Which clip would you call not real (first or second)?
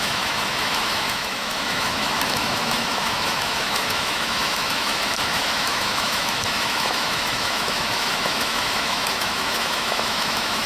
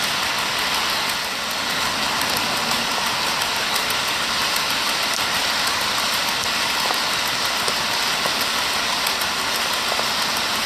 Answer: first